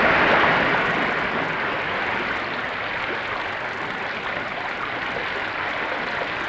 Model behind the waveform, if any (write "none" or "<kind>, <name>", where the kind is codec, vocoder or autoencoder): none